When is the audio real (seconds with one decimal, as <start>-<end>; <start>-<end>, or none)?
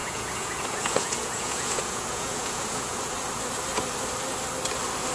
3.1-5.1